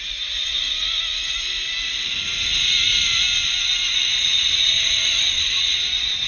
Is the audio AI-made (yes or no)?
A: no